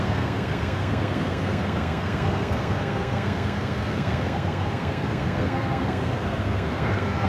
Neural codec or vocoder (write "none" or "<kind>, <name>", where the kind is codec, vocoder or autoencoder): codec, SNAC